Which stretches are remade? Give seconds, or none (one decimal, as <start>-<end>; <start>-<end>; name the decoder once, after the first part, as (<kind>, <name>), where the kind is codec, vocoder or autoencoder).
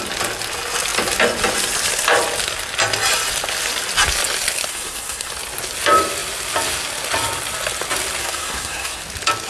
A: 4.7-5.3 (codec, SNAC); 8.2-9.0